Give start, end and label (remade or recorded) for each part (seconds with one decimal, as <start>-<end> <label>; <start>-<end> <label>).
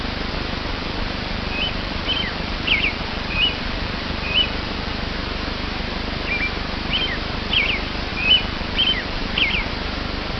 0.0-0.7 recorded; 0.7-4.9 remade; 4.9-8.1 recorded; 8.1-9.7 remade; 9.7-10.4 recorded